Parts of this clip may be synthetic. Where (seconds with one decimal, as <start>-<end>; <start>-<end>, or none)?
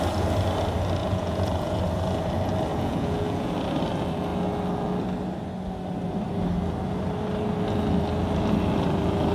1.0-1.8; 2.7-3.5